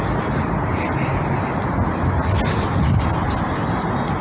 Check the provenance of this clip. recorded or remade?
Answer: recorded